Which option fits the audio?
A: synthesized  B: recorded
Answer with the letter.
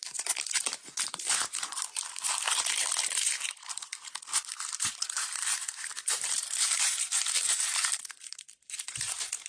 A